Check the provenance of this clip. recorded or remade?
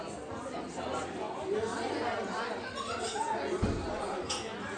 recorded